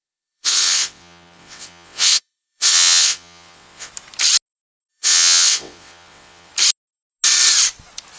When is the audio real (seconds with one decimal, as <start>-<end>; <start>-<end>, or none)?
3.9-4.9; 6.5-8.2